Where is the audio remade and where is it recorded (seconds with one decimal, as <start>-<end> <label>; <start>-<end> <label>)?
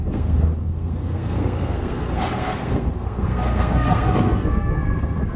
0.0-5.4 remade